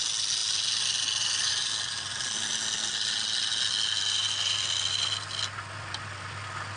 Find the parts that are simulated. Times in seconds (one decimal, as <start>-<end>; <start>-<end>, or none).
none